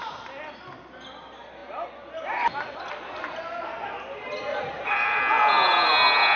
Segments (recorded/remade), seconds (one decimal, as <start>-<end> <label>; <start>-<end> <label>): 0.0-4.5 recorded; 4.5-5.2 remade; 5.2-6.4 recorded